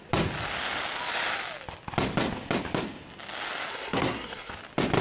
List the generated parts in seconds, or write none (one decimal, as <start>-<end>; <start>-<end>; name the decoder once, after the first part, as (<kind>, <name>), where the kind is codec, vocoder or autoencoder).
3.7-4.5 (codec, SNAC)

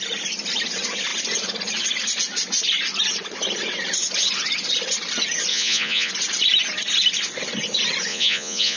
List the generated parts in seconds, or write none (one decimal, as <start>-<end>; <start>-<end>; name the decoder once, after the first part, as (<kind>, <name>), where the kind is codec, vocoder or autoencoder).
5.5-6.1 (vocoder, Vocos); 8.1-8.8

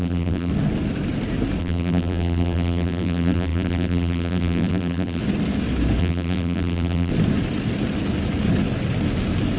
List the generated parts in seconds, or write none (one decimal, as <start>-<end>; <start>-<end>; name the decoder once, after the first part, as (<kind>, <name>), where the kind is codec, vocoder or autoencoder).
0.0-0.5 (vocoder, BigVGAN v2); 1.6-5.2; 6.0-7.1

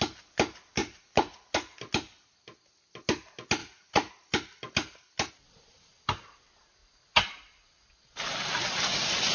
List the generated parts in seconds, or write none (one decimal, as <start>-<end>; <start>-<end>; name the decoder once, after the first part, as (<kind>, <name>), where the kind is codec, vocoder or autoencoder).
0.8-1.5 (vocoder, Vocos); 3.6-4.1

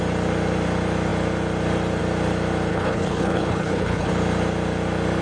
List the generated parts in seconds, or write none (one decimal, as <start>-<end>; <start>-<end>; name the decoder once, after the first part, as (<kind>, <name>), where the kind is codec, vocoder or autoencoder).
2.7-4.1 (codec, HILCodec)

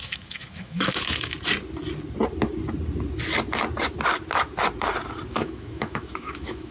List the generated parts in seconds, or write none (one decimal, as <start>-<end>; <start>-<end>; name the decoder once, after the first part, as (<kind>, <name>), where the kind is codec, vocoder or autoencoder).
0.0-1.3 (autoencoder, DAC-VAE); 5.3-6.7